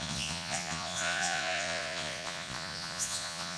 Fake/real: fake